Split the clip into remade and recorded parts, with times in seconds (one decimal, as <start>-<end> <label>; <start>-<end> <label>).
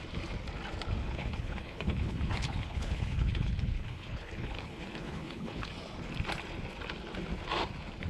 0.0-1.0 recorded; 1.0-5.7 remade; 5.7-8.1 recorded